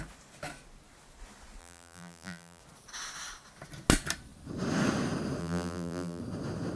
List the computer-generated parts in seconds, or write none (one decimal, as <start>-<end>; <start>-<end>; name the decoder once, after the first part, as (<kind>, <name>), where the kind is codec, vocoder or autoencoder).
1.6-2.6 (vocoder, BigVGAN v2); 5.4-6.2